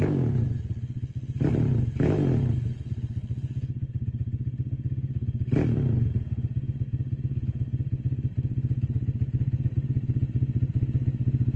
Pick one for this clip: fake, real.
real